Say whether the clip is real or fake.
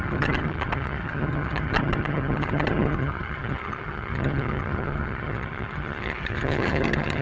fake